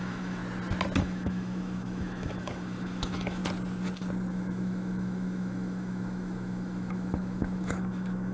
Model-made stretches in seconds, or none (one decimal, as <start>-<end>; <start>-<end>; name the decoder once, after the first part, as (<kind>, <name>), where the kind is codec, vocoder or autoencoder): 0.0-0.4 (autoencoder, DAC-VAE); 1.0-3.4; 4.3-8.3